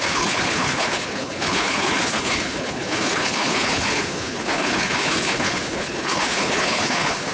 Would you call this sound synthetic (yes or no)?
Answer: yes